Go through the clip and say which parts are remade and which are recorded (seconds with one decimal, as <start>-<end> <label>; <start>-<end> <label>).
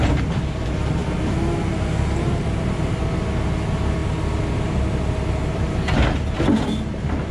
0.0-1.0 recorded; 1.0-3.1 remade; 3.1-7.3 recorded